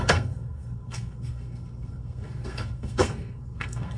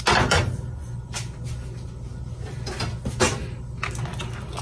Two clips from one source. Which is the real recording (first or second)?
second